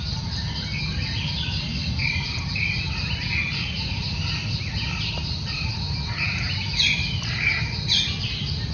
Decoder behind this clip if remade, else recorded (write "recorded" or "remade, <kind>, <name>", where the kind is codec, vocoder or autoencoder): recorded